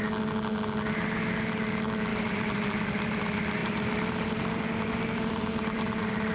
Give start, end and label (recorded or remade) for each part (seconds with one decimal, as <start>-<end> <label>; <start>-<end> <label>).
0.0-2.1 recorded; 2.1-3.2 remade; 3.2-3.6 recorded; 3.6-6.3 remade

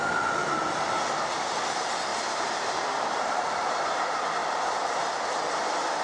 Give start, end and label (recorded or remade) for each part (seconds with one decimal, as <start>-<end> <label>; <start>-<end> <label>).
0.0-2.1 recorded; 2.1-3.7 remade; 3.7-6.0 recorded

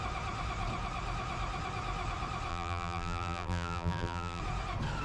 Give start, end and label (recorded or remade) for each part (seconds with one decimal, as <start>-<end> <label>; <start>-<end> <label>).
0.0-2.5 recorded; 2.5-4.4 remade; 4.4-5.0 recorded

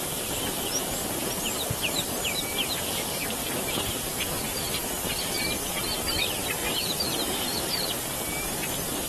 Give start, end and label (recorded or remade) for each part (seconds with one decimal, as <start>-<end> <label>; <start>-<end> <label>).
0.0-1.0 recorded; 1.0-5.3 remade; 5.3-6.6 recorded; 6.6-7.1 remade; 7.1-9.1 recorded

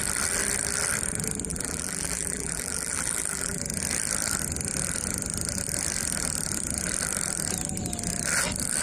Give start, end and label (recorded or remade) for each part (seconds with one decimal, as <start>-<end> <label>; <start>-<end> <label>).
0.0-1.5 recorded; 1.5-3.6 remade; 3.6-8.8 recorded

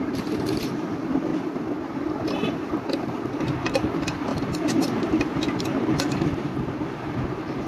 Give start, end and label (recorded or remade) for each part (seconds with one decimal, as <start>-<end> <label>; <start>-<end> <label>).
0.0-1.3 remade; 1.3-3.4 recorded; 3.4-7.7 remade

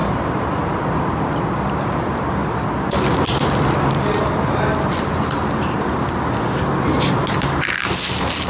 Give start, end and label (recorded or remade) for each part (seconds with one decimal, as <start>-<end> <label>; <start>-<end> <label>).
0.0-8.5 recorded